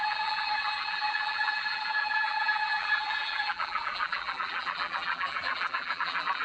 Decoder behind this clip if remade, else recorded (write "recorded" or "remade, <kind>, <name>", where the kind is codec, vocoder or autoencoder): remade, vocoder, BigVGAN v2